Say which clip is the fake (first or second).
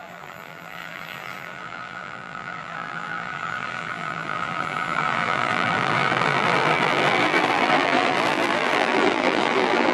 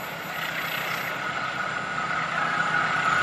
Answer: first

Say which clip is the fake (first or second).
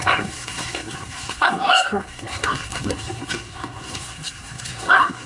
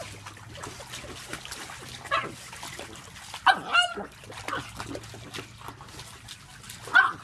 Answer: first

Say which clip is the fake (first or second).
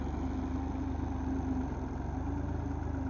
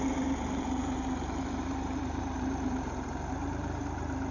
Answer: second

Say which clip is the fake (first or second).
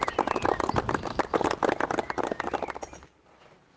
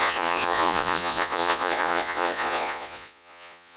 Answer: second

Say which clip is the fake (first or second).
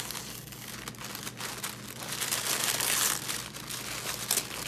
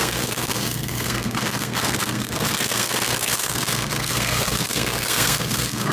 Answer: second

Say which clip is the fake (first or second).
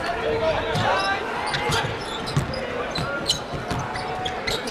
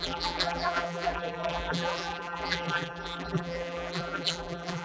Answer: second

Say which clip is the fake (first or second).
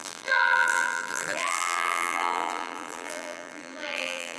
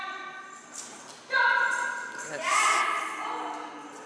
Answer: first